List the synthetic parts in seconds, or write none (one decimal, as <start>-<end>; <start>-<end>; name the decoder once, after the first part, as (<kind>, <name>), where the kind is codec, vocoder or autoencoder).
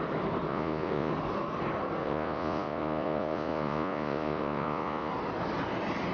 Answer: 0.5-1.1 (vocoder, Vocos); 2.0-5.1